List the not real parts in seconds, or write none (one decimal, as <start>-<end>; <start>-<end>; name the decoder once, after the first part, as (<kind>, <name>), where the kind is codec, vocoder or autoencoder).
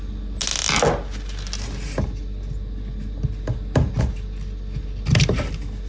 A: none